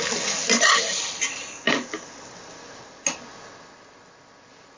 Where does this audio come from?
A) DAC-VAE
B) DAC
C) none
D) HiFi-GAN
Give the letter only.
C